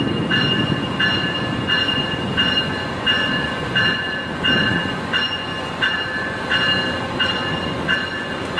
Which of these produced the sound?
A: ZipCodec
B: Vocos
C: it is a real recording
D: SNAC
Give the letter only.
B